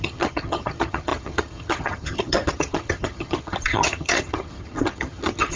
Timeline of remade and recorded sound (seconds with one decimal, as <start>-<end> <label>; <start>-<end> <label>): 0.0-5.6 remade